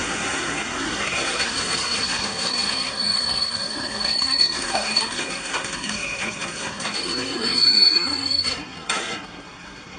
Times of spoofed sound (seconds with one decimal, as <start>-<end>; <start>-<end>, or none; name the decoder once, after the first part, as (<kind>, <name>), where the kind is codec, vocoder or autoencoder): 0.0-10.0 (codec, SNAC)